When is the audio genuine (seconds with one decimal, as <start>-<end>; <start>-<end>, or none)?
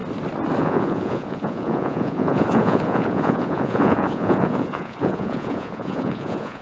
0.0-0.6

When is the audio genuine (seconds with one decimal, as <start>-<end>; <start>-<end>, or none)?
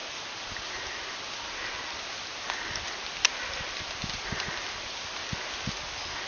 0.0-6.3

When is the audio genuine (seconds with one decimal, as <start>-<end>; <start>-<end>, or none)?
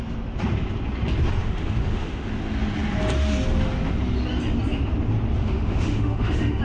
0.0-1.4; 2.3-5.4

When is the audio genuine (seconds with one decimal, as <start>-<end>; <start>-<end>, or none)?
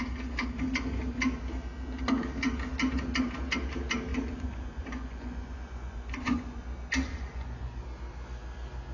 0.0-4.1; 6.6-7.1; 7.8-8.9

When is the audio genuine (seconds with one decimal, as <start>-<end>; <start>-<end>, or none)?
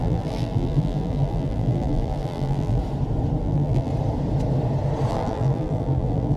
2.8-3.4; 3.9-5.1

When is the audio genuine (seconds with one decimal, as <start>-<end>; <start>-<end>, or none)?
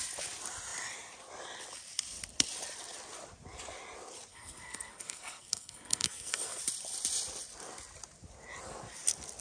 0.0-4.3; 6.6-9.4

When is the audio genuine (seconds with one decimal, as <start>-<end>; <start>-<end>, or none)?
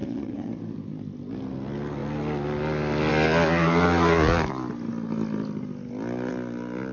0.5-6.9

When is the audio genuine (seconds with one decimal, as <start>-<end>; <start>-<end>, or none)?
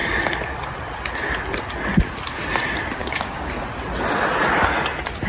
0.0-3.0; 3.5-5.3